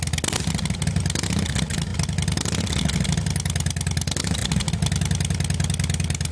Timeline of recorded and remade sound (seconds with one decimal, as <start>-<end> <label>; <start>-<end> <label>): 0.0-6.3 recorded